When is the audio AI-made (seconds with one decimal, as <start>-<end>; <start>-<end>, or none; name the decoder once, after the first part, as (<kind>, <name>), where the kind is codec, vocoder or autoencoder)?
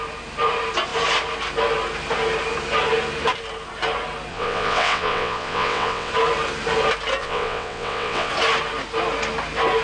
4.3-6.1 (vocoder, WaveNeXt); 7.2-8.3